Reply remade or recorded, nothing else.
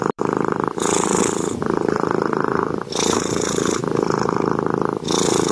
remade